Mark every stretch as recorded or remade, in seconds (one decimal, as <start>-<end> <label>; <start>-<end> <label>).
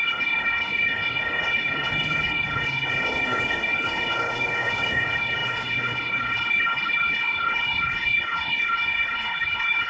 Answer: 0.0-9.9 remade